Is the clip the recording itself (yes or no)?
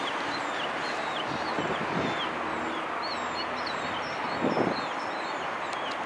yes